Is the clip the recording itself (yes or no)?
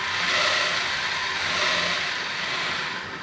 yes